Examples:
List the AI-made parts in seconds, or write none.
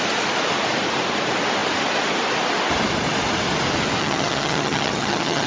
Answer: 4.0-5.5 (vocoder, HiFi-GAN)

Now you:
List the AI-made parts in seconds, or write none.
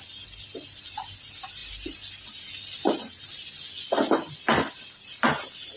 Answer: none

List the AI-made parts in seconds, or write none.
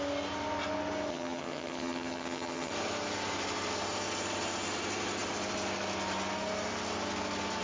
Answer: 1.1-2.7 (vocoder, HiFi-GAN)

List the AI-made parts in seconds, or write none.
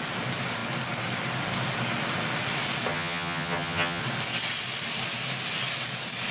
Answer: 2.9-4.0 (vocoder, HiFi-GAN)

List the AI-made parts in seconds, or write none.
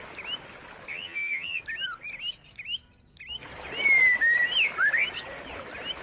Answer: 0.9-1.6 (vocoder, HiFi-GAN)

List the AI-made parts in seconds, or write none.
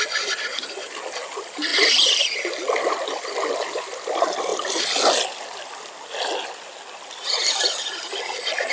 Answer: none